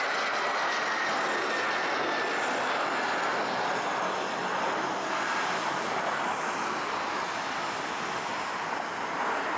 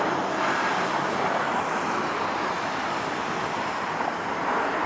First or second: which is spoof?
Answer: second